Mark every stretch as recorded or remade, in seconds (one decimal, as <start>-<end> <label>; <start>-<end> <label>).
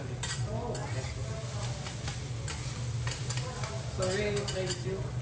0.0-5.2 recorded